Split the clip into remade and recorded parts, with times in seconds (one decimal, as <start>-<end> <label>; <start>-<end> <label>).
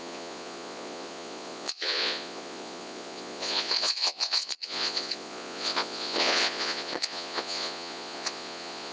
0.0-8.9 remade